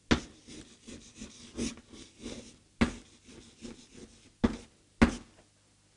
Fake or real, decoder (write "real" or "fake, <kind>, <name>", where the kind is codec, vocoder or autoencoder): real